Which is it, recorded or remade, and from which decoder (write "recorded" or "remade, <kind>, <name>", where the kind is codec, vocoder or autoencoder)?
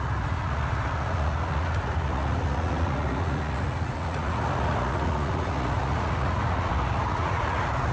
remade, vocoder, Vocos